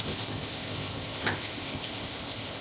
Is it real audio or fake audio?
fake